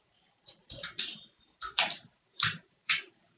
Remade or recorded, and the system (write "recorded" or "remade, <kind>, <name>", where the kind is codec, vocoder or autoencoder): remade, vocoder, BigVGAN v2